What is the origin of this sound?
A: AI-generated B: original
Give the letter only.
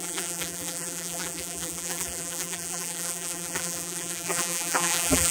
A